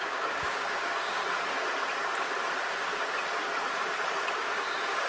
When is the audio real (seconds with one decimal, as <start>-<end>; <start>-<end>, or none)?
1.2-4.3